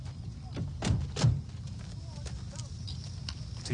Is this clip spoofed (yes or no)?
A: no